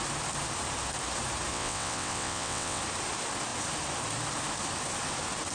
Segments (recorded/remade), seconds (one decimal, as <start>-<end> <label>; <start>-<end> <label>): 0.0-1.5 recorded; 1.5-2.8 remade; 2.8-5.5 recorded